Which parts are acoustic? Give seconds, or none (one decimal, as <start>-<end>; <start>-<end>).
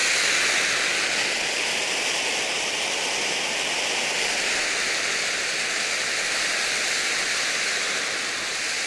0.0-8.9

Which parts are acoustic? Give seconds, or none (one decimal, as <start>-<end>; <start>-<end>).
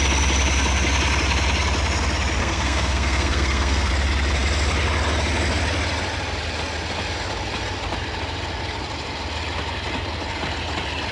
0.0-2.4; 3.9-11.1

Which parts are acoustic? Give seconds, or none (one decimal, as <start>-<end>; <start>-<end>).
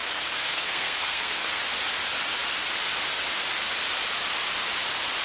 1.6-5.2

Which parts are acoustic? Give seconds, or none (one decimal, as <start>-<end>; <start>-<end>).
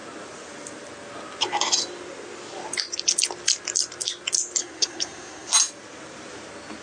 0.0-4.6; 5.5-6.8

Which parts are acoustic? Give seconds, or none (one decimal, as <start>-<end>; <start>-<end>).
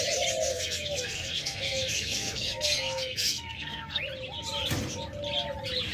0.0-0.5; 4.0-5.9